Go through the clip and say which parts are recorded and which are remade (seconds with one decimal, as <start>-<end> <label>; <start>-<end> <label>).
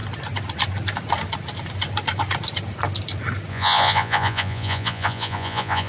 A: 0.0-3.5 recorded; 3.5-5.9 remade